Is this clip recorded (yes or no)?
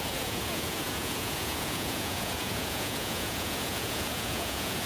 no